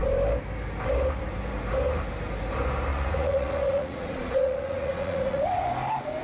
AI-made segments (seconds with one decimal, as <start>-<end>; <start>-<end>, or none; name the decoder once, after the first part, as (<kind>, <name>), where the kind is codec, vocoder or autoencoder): 2.9-5.7 (vocoder, Vocos)